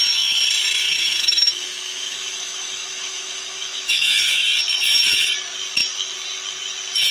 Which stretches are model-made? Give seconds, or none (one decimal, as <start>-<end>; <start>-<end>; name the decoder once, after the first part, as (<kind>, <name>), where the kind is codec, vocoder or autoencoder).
0.9-4.5 (autoencoder, DAC-VAE)